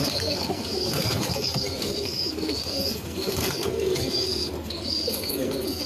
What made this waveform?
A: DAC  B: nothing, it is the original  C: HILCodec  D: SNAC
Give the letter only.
D